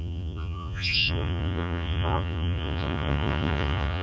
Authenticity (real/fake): fake